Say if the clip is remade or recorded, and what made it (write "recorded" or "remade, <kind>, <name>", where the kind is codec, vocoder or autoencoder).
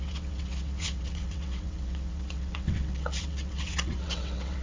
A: remade, vocoder, WaveNeXt